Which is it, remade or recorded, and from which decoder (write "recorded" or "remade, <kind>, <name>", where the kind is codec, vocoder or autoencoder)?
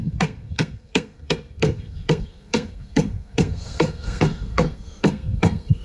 remade, codec, SNAC